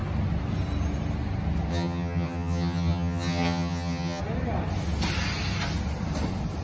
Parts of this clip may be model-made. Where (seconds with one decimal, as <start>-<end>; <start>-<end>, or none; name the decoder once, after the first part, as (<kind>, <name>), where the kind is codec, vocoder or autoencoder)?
1.7-4.2 (vocoder, HiFi-GAN)